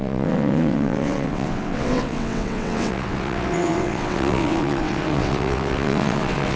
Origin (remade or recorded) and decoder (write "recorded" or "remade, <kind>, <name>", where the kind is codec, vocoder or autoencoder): remade, vocoder, WaveNeXt